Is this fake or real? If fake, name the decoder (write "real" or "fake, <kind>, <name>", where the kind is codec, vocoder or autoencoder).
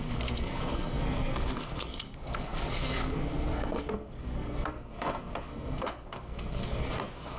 fake, codec, SNAC